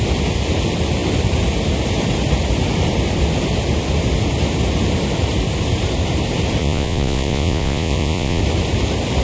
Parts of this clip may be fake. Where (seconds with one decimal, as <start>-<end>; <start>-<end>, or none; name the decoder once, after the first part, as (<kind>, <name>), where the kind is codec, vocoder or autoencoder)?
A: 6.6-8.4 (vocoder, Vocos)